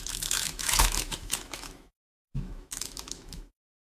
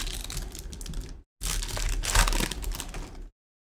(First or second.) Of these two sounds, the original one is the second